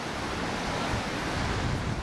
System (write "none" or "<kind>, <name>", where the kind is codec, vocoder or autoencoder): none